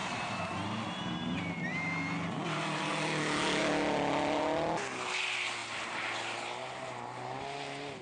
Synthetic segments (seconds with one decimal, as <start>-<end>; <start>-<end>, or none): none